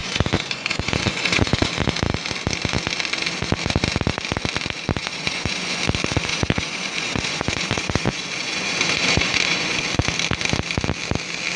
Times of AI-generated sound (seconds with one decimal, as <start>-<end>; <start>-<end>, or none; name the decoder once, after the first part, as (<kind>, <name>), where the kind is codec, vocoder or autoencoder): 0.0-1.7 (vocoder, Vocos); 5.0-5.8; 6.3-9.8